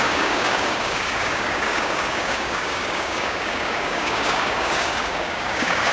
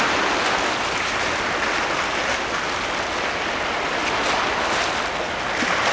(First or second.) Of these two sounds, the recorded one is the second